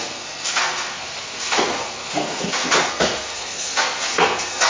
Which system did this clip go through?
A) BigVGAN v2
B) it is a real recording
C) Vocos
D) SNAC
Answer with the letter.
D